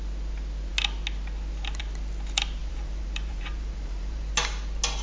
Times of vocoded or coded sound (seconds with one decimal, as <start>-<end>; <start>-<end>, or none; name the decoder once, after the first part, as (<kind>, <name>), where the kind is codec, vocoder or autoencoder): 2.6-4.3 (vocoder, BigVGAN v2)